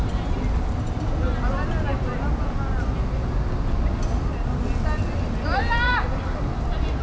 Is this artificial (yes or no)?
no